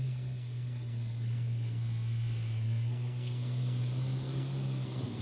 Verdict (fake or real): fake